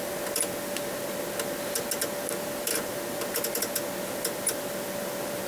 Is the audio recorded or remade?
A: recorded